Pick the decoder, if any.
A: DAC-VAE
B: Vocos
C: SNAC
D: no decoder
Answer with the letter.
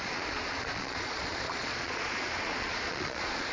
B